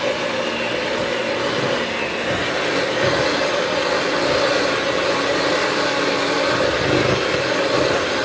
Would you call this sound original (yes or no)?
yes